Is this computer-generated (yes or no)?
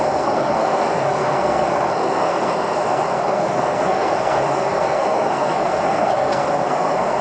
yes